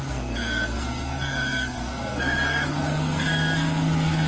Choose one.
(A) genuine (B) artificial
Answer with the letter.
B